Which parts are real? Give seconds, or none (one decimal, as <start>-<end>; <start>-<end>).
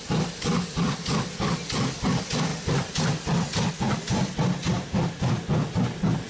0.0-6.3